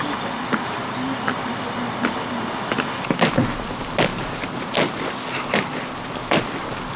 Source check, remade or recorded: recorded